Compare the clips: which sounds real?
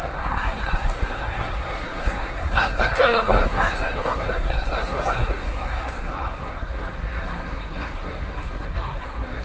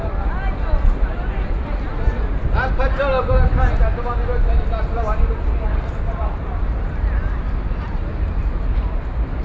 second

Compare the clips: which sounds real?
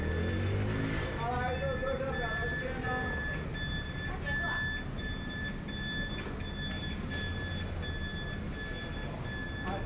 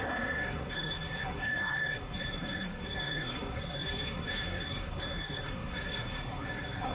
first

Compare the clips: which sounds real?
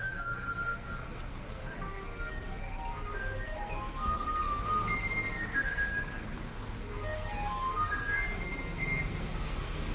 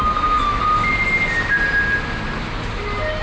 second